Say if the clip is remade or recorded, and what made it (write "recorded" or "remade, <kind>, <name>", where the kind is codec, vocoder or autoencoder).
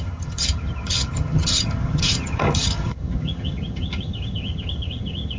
remade, vocoder, HiFi-GAN